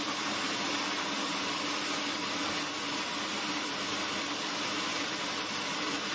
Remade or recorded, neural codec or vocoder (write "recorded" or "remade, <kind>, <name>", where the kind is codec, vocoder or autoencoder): recorded